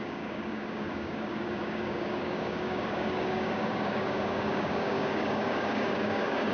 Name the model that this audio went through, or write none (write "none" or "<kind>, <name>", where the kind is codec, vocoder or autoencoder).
codec, DAC